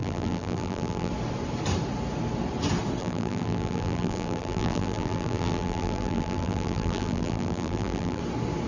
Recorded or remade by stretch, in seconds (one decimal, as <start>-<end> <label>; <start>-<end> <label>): 0.0-1.1 remade; 1.1-3.0 recorded; 3.0-8.2 remade; 8.2-8.7 recorded

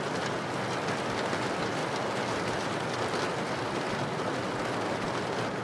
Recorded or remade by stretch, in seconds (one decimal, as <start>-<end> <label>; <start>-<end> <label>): 0.0-1.8 recorded; 1.8-2.5 remade; 2.5-5.6 recorded

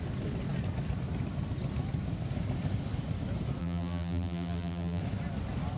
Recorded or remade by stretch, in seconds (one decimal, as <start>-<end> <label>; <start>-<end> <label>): 0.0-3.6 recorded; 3.6-5.0 remade; 5.0-5.8 recorded

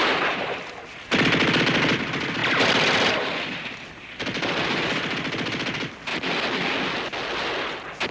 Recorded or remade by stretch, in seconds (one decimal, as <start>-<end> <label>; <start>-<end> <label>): 0.0-2.4 recorded; 2.4-4.8 remade; 4.8-8.1 recorded

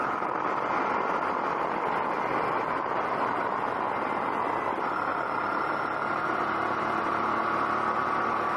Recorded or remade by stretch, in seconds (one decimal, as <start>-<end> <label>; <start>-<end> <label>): 0.0-5.1 recorded; 5.1-5.7 remade; 5.7-8.6 recorded

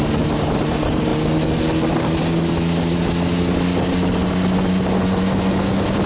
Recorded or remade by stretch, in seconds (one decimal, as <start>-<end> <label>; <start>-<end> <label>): 0.0-6.1 recorded